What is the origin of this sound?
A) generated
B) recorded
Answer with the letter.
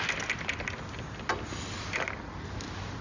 B